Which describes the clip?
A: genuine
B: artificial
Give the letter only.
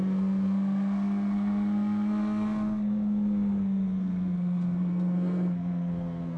B